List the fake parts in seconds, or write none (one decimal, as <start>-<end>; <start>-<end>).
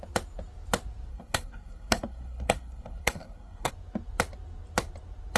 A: 1.1-3.7